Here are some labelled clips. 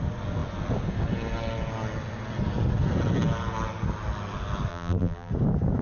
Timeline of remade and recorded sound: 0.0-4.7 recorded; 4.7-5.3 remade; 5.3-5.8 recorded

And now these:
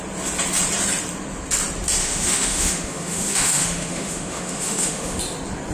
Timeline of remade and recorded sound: 0.0-2.0 recorded; 2.0-5.2 remade; 5.2-5.7 recorded

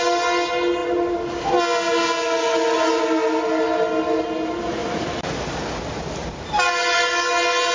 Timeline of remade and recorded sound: 0.0-7.7 recorded

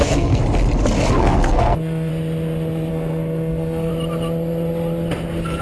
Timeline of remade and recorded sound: 0.0-0.4 remade; 0.4-1.2 recorded; 1.2-2.1 remade; 2.1-2.9 recorded; 2.9-3.9 remade; 3.9-5.6 recorded

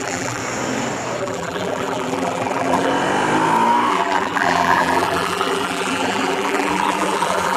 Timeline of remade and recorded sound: 0.0-0.4 remade; 0.4-1.2 recorded; 1.2-2.9 remade; 2.9-3.9 recorded; 3.9-7.6 remade

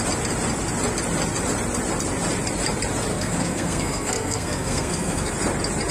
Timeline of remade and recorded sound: 0.0-3.1 recorded; 3.1-5.3 remade; 5.3-5.9 recorded

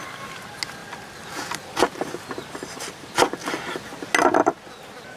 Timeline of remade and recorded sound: 0.0-0.8 recorded; 0.8-3.6 remade; 3.6-5.2 recorded